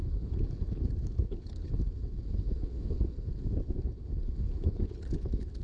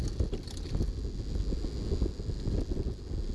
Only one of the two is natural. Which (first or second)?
second